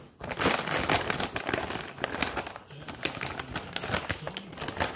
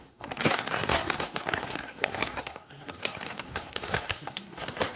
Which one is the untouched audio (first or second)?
first